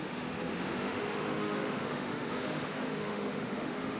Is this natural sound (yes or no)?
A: no